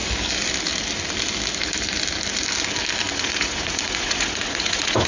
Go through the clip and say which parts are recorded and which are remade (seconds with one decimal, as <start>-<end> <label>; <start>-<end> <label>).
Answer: 0.0-3.1 recorded; 3.1-5.1 remade